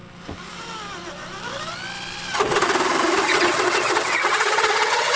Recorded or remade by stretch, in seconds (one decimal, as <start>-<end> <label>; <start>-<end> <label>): 0.0-3.3 recorded; 3.3-5.2 remade